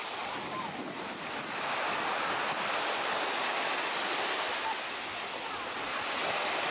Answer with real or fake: real